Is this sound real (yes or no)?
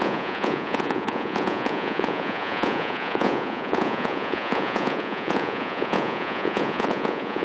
no